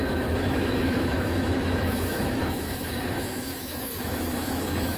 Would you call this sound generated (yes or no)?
yes